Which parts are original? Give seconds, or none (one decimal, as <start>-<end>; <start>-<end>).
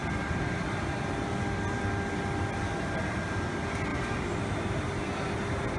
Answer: 0.0-3.9; 4.4-5.8